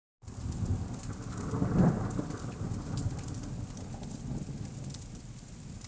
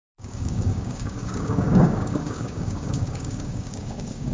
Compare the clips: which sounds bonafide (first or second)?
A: first